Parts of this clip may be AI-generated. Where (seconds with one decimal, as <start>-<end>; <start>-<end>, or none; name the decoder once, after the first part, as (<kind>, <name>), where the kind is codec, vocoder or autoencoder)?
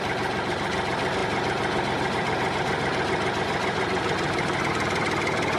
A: 0.0-5.6 (vocoder, BigVGAN v2)